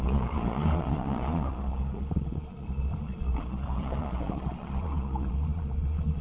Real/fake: fake